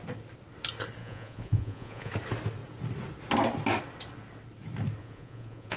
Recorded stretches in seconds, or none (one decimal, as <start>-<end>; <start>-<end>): 0.0-1.0; 2.1-5.0